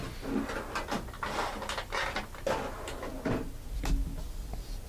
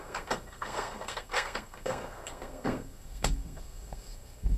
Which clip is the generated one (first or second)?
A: second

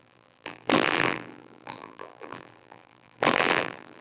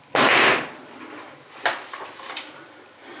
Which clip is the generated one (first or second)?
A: first